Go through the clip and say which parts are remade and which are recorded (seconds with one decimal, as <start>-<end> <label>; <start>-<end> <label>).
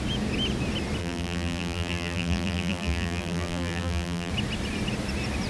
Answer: 0.0-1.0 recorded; 1.0-4.3 remade; 4.3-5.5 recorded